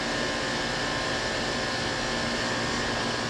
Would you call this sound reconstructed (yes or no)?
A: no